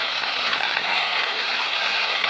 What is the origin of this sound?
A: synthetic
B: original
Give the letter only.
A